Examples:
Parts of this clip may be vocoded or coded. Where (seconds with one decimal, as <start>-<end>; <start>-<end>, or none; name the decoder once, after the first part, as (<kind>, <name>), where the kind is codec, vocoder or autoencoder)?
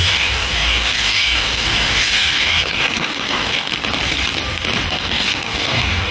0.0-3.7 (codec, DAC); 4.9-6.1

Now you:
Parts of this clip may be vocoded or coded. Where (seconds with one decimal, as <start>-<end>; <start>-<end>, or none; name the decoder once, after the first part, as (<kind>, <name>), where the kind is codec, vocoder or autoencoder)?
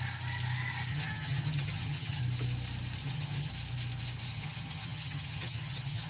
0.9-2.2 (vocoder, HiFi-GAN); 3.0-3.5; 4.3-6.1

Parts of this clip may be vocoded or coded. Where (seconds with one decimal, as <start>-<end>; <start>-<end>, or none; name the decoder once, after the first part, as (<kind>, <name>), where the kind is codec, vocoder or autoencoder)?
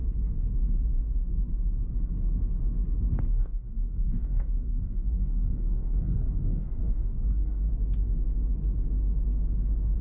3.3-7.7 (codec, DAC)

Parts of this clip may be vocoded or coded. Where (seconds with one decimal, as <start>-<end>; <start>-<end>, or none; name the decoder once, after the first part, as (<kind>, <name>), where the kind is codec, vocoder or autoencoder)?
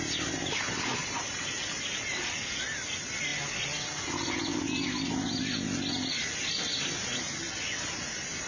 none